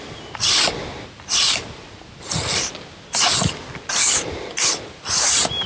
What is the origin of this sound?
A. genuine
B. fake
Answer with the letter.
A